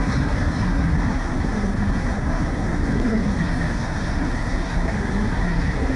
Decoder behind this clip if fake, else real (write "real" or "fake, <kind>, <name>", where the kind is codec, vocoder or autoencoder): fake, codec, SNAC